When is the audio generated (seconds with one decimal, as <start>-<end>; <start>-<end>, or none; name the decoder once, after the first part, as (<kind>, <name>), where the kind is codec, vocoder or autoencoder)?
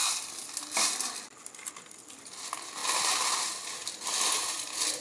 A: none